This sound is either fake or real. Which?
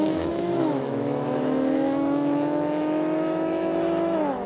fake